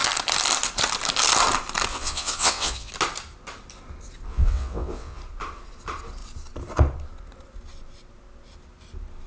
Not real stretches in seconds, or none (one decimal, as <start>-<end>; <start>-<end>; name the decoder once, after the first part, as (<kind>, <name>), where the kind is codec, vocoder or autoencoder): 1.9-2.9 (vocoder, WaveNeXt); 4.3-5.2